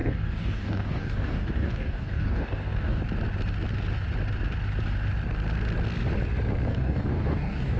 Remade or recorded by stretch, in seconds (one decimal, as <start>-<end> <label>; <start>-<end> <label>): 0.0-3.0 remade; 3.0-6.7 recorded; 6.7-7.8 remade